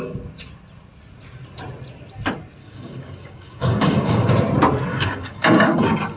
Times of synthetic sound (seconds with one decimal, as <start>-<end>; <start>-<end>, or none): 2.6-4.3; 4.9-6.2